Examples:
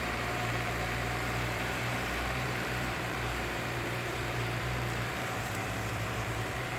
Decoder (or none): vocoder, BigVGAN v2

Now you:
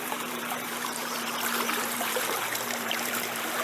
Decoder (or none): vocoder, BigVGAN v2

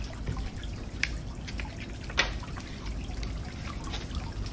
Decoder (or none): none